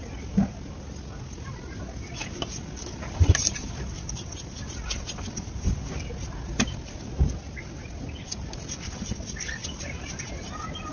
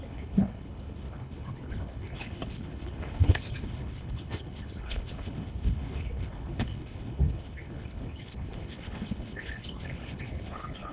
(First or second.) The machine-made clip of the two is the second